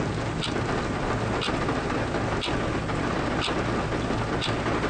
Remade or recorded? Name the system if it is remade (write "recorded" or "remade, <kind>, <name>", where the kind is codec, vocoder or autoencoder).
recorded